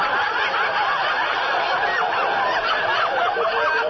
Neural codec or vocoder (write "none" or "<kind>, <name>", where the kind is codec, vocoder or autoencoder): none